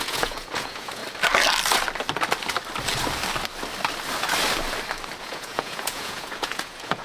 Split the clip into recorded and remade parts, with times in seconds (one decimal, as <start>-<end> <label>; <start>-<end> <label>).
0.0-1.0 remade; 1.0-5.2 recorded; 5.2-7.0 remade